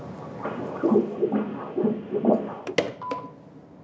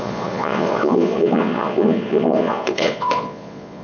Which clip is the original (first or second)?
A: first